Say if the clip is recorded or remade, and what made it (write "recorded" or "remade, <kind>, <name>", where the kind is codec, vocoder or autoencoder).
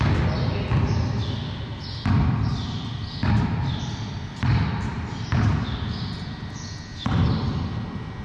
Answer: recorded